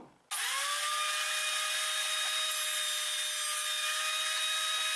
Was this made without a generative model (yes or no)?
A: yes